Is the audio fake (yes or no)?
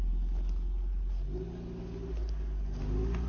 no